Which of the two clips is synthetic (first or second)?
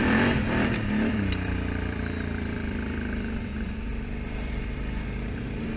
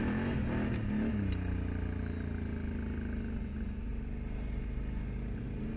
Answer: first